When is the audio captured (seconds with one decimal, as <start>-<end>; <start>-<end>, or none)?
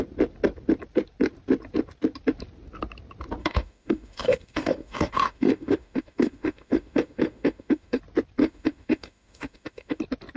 0.0-3.4; 8.0-8.4; 10.0-10.4